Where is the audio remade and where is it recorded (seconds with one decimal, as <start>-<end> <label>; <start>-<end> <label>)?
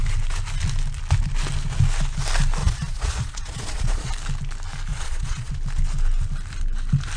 0.0-2.6 recorded; 2.6-4.1 remade; 4.1-4.9 recorded; 4.9-5.5 remade; 5.5-7.2 recorded